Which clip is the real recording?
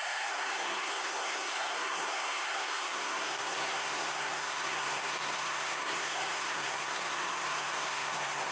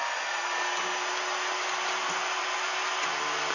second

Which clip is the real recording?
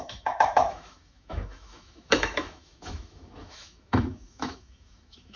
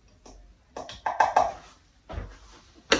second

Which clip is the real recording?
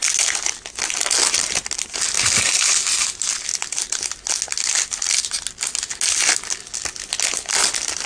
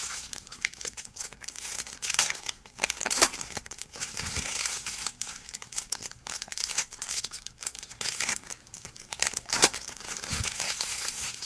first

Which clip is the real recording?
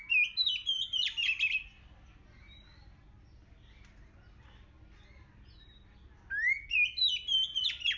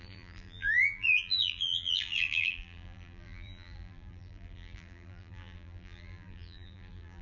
first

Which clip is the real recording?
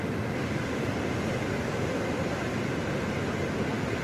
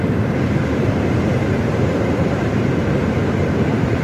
first